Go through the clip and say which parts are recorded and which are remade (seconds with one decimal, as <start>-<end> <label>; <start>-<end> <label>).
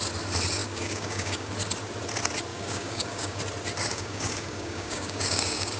0.0-0.6 recorded; 0.6-1.5 remade; 1.5-2.5 recorded; 2.5-3.4 remade; 3.4-3.9 recorded; 3.9-5.8 remade